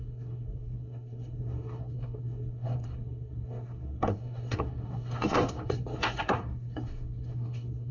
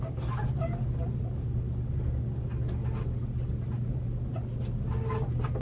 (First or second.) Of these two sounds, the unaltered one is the second